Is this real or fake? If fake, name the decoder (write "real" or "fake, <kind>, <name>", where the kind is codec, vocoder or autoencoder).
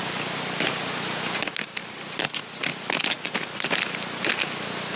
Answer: real